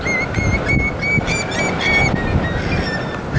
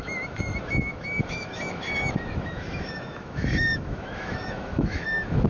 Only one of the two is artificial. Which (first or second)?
second